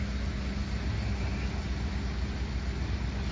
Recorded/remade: recorded